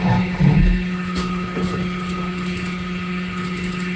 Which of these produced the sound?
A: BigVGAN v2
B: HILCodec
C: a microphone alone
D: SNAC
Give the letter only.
B